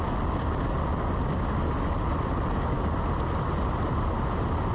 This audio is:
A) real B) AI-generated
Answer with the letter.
A